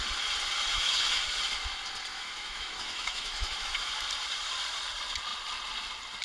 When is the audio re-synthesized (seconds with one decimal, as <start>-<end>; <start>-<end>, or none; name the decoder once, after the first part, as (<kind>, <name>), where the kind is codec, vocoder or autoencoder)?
0.7-1.2 (autoencoder, DAC-VAE); 2.1-3.9